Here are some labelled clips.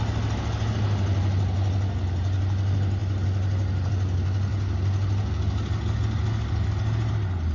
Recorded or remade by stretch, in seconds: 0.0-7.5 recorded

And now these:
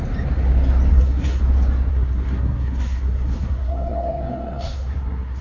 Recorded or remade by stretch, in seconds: 0.0-0.9 recorded; 0.9-1.4 remade; 1.4-1.9 recorded; 1.9-5.4 remade

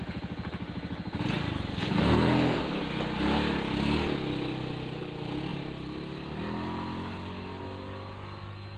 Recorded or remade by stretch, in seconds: 0.0-1.7 recorded; 1.7-2.8 remade; 2.8-8.8 recorded

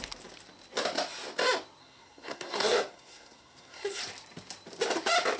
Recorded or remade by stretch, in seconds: 0.0-1.8 recorded; 1.8-4.0 remade; 4.0-5.4 recorded

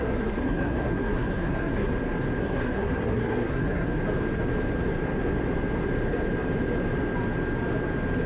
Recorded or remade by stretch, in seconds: 0.0-1.9 remade; 1.9-2.4 recorded; 2.4-4.0 remade; 4.0-8.3 recorded

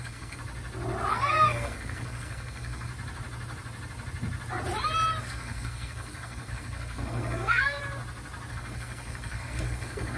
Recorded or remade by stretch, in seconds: 0.0-0.4 remade; 0.4-1.1 recorded; 1.1-2.9 remade; 2.9-5.2 recorded; 5.2-7.8 remade; 7.8-8.5 recorded; 8.5-10.2 remade

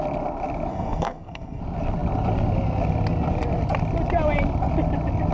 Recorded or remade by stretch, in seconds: 0.0-0.7 recorded; 0.7-1.6 remade; 1.6-5.3 recorded

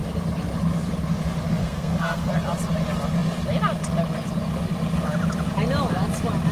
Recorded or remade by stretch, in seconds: 0.0-1.6 recorded; 1.6-2.3 remade; 2.3-6.5 recorded